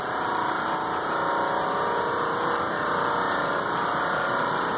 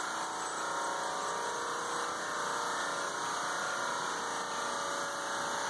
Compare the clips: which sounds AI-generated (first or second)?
first